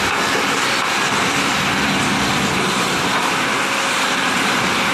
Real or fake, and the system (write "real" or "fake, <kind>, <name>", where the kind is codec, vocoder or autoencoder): real